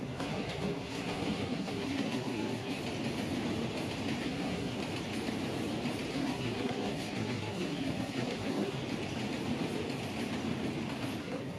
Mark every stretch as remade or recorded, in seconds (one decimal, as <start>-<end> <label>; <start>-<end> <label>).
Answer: 0.0-2.8 remade; 2.8-4.2 recorded; 4.2-4.8 remade; 4.8-6.1 recorded; 6.1-8.8 remade; 8.8-11.2 recorded; 11.2-11.6 remade